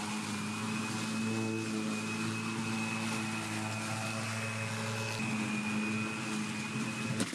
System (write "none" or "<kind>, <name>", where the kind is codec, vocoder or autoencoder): none